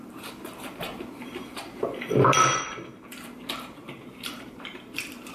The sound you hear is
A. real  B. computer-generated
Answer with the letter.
B